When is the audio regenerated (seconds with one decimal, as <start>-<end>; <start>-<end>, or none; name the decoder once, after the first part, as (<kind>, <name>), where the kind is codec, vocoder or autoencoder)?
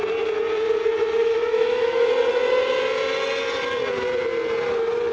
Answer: 1.2-2.1 (autoencoder, DAC-VAE)